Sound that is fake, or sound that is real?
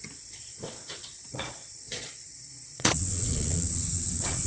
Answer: fake